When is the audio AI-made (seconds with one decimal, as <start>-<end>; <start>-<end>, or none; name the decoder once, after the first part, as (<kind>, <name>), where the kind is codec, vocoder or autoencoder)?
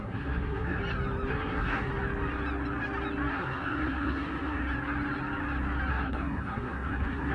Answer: 0.0-0.8 (codec, SNAC); 1.3-1.9; 3.3-4.6; 5.9-7.3